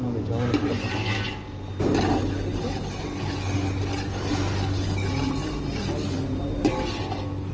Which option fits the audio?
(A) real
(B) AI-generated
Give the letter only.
A